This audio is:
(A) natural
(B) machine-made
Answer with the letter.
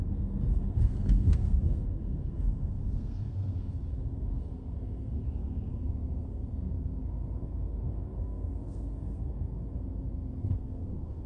B